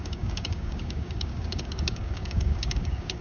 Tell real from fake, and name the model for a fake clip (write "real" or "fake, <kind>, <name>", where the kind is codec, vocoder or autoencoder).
fake, codec, DAC